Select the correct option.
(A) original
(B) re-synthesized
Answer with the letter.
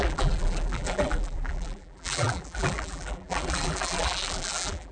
B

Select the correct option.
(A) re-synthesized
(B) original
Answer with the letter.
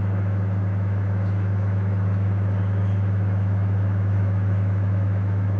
A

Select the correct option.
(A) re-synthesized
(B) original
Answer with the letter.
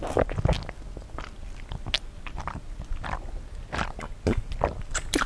B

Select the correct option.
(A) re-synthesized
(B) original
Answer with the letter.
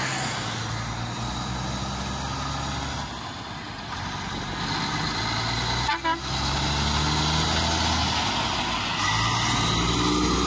B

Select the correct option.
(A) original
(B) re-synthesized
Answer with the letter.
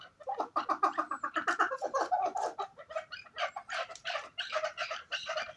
B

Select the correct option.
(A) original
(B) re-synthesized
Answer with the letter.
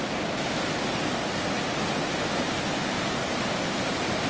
A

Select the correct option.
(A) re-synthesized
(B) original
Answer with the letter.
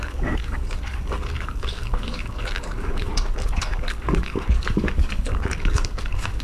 A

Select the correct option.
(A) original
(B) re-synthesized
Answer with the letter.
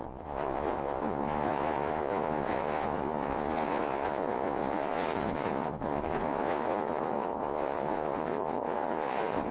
B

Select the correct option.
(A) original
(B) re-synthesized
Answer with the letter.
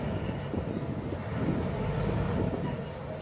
A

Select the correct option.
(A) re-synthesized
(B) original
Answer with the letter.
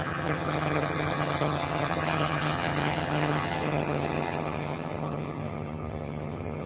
A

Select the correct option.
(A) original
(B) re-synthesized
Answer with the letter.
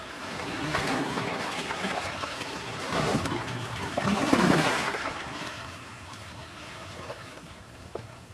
B